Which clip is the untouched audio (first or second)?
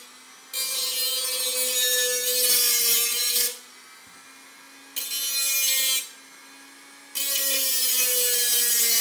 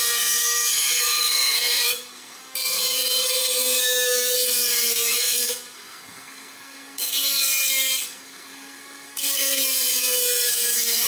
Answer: first